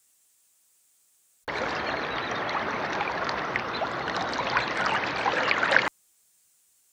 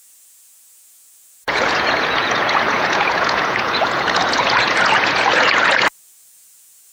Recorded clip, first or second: first